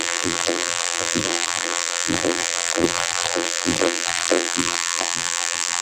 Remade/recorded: remade